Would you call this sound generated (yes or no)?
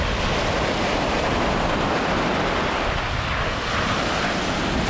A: no